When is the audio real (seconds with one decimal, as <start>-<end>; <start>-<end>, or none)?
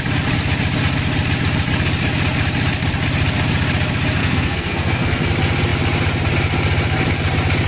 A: 0.0-4.2; 5.3-7.7